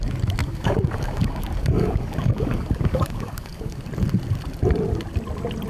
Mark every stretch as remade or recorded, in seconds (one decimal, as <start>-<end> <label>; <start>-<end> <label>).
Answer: 0.0-0.4 recorded; 0.4-3.8 remade; 3.8-5.7 recorded